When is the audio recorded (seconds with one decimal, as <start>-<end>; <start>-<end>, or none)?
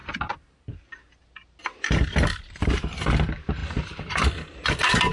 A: 0.0-5.1